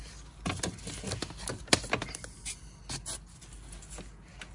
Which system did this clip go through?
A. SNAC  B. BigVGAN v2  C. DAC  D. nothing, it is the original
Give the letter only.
D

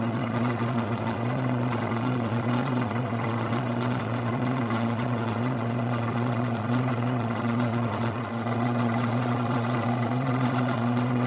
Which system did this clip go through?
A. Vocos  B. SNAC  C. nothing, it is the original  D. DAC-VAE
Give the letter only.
A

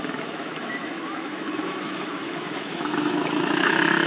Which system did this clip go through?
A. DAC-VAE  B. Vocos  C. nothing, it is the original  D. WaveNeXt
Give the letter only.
A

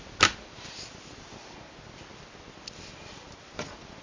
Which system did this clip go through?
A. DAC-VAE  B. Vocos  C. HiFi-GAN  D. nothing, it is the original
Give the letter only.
D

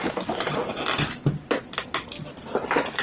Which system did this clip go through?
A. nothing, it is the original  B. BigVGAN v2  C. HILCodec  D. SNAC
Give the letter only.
A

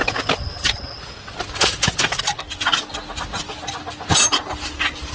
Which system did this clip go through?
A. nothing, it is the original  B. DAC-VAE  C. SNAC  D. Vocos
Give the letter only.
A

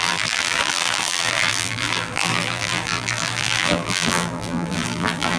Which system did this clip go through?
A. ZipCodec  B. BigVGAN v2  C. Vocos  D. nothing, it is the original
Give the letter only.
B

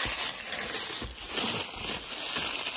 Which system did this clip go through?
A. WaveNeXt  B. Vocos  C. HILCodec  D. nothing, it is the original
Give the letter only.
D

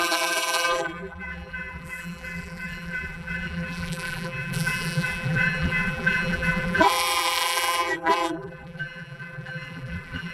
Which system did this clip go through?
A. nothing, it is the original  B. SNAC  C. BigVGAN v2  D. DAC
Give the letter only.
C